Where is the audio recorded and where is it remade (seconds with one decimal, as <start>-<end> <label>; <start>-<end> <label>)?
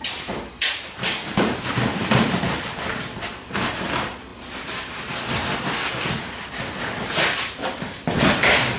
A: 0.0-8.8 recorded